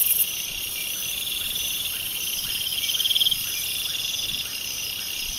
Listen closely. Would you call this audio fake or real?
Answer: fake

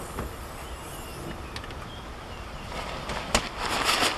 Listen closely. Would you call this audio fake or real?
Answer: real